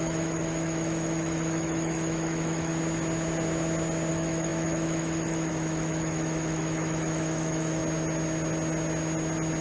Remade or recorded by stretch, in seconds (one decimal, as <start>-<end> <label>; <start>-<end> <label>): 0.0-2.7 remade; 2.7-4.1 recorded; 4.1-7.8 remade; 7.8-9.6 recorded